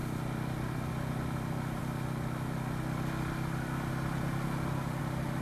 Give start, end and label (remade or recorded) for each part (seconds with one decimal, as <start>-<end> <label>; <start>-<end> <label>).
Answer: 0.0-5.4 recorded